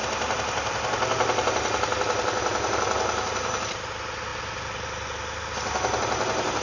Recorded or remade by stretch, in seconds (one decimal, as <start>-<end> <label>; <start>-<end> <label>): 0.0-6.6 recorded